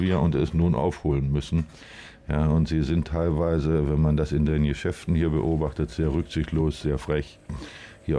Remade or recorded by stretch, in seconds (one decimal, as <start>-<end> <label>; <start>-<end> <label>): 0.0-0.4 recorded; 0.4-1.1 remade; 1.1-8.2 recorded